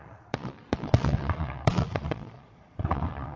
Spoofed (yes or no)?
yes